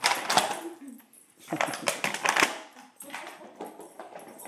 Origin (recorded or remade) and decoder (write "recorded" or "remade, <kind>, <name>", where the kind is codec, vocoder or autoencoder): recorded